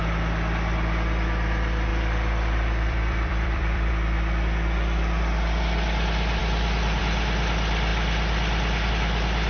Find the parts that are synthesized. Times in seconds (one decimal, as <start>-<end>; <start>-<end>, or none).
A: 1.9-3.9